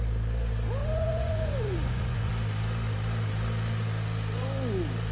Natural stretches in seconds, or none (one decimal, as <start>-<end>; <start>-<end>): 0.0-0.8; 2.3-5.1

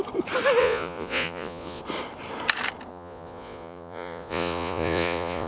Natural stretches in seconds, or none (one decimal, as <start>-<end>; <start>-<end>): 0.0-0.6; 1.8-2.9